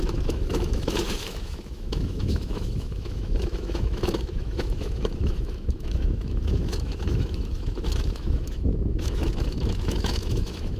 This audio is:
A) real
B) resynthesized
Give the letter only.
B